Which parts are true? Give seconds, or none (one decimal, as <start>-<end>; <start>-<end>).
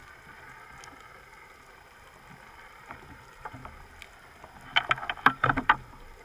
0.0-2.8; 3.6-5.2